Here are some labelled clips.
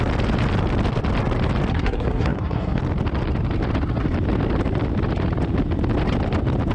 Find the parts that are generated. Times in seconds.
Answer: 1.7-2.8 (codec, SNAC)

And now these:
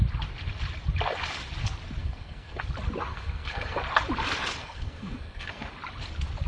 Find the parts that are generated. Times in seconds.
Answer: 2.0-2.6 (codec, SNAC); 3.1-3.8; 4.6-5.7

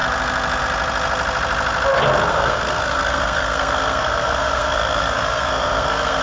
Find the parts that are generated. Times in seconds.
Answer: 2.3-6.2 (codec, SNAC)

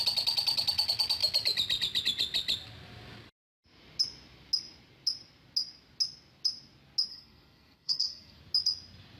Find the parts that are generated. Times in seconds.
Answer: 7.1-8.4 (codec, SNAC)

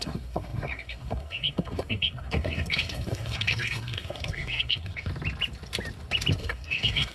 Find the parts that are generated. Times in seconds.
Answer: 0.0-5.1 (codec, SNAC); 6.4-7.1

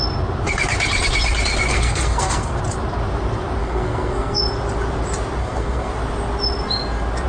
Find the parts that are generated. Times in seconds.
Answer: 1.7-2.6 (codec, SNAC); 3.6-4.4; 5.4-5.9

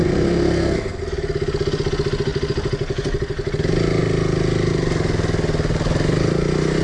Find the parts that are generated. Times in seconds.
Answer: 0.0-1.0 (codec, SNAC)